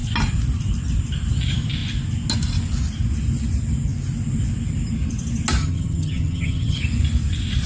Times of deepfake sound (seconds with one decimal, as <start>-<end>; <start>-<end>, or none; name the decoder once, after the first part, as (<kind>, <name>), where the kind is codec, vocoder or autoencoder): 5.6-6.8 (vocoder, HiFi-GAN)